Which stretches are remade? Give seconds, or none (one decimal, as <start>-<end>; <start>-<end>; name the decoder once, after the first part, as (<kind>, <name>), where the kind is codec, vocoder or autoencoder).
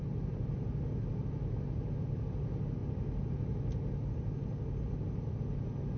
none